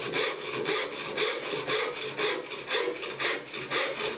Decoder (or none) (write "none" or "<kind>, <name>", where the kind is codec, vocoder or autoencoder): none